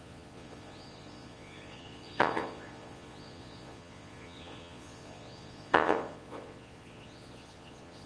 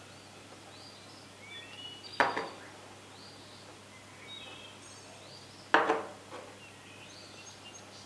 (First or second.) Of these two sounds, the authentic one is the second